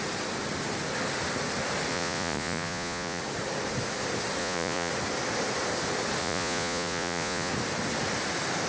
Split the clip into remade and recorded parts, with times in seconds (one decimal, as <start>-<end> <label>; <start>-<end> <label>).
0.0-1.9 recorded; 1.9-3.2 remade; 3.2-4.4 recorded; 4.4-4.9 remade; 4.9-6.2 recorded; 6.2-7.5 remade; 7.5-8.7 recorded